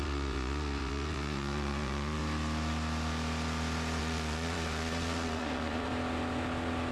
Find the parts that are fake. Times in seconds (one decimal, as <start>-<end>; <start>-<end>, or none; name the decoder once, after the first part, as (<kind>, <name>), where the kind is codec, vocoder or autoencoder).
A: 0.0-2.2 (vocoder, Vocos); 4.0-5.9